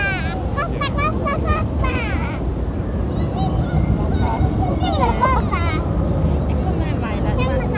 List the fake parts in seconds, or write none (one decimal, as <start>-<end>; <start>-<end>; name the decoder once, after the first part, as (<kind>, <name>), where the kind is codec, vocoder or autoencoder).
1.1-3.1 (vocoder, BigVGAN v2); 4.1-4.8